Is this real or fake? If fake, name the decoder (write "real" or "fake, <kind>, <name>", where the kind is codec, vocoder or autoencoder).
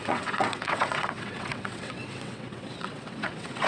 fake, vocoder, WaveNeXt